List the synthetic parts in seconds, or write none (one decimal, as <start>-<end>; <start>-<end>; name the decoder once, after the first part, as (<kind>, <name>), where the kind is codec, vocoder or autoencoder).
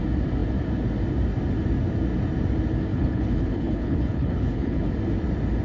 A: 2.9-4.9 (codec, HILCodec)